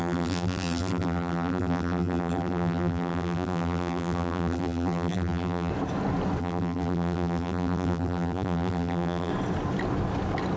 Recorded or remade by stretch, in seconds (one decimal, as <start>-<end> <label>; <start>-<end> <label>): 0.0-5.7 remade; 5.7-6.4 recorded; 6.4-9.3 remade; 9.3-10.6 recorded